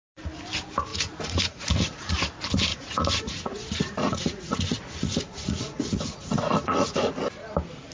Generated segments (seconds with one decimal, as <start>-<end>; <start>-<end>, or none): 0.9-2.1; 2.7-7.1

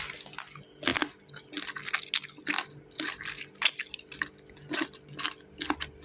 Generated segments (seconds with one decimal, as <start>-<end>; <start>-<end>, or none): none

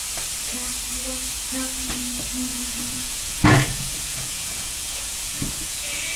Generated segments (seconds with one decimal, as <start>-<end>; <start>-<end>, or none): 2.5-6.2